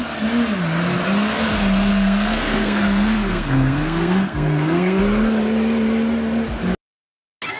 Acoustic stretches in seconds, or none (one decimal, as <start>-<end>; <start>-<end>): 0.0-1.9; 5.0-7.6